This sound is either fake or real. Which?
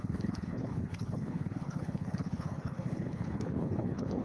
fake